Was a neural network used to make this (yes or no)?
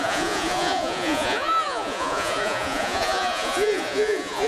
yes